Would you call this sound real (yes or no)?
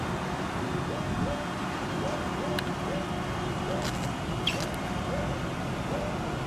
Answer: yes